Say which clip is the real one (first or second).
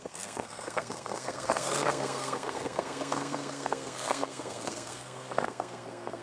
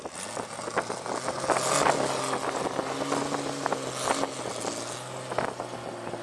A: second